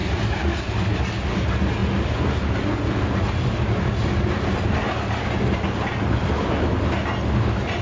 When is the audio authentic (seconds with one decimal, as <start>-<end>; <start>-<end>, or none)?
0.0-7.8